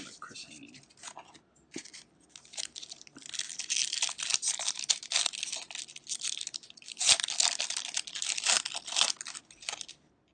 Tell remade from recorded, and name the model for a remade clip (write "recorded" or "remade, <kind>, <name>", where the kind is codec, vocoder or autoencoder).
recorded